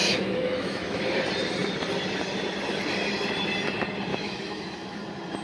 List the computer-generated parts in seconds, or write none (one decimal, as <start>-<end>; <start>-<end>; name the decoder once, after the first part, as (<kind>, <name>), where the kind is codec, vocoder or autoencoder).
0.0-1.0 (autoencoder, DAC-VAE); 4.1-5.0